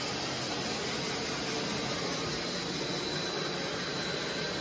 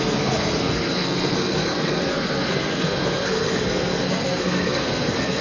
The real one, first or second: first